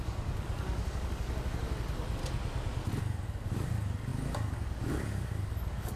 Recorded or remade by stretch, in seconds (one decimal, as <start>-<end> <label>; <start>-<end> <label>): 0.0-2.2 remade; 2.2-3.0 recorded; 3.0-6.0 remade